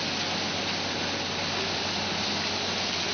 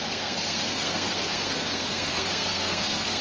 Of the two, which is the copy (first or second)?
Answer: second